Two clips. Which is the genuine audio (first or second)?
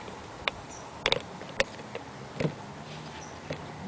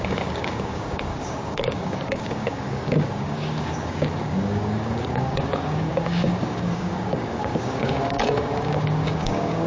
first